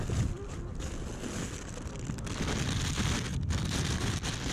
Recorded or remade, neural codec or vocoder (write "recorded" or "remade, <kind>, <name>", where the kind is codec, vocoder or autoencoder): recorded